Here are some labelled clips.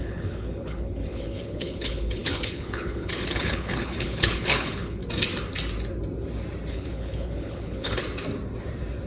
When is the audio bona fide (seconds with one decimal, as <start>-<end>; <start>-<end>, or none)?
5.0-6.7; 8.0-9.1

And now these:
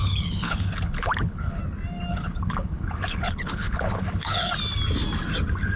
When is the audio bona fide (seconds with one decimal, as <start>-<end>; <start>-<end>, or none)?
1.6-2.1; 4.5-5.8

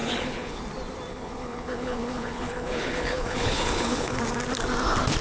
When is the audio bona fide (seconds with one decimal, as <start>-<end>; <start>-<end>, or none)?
0.6-1.1; 4.2-5.2